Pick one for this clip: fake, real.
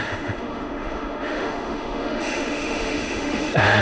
fake